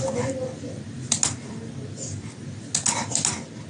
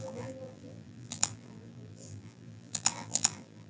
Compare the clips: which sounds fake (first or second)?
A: second